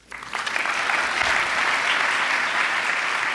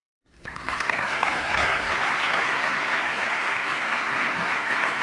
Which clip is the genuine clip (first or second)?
first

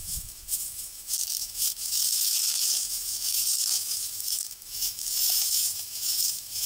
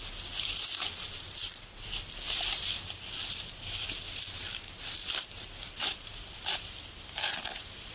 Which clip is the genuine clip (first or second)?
second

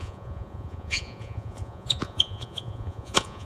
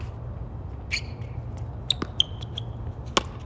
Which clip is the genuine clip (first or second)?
second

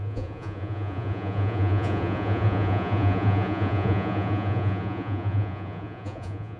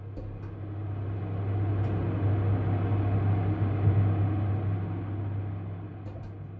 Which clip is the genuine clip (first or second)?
second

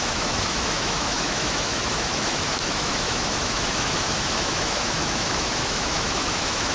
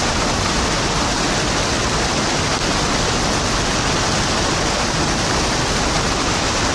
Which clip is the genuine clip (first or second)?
second